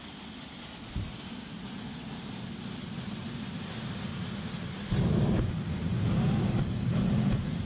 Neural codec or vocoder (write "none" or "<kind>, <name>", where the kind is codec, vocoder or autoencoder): none